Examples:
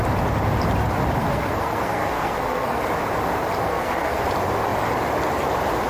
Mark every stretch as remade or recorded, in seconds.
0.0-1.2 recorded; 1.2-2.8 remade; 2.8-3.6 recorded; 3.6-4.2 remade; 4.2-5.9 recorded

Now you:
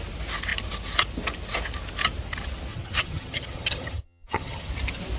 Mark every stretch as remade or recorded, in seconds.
0.0-2.7 recorded; 2.7-4.7 remade; 4.7-5.2 recorded